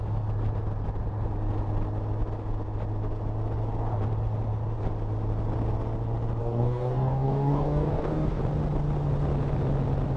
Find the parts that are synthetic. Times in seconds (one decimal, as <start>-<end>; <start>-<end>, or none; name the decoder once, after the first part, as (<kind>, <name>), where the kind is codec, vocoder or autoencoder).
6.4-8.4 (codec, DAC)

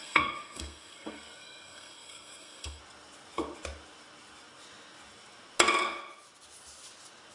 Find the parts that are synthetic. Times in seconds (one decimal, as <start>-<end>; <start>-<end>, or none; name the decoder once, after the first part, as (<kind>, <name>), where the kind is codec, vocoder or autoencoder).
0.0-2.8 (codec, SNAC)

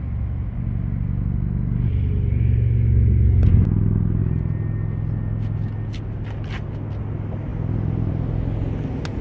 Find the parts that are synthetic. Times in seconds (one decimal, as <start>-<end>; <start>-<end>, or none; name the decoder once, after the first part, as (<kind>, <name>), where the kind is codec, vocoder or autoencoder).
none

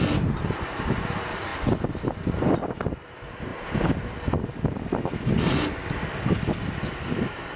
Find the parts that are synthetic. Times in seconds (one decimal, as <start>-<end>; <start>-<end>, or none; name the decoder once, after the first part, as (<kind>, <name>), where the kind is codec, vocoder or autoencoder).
none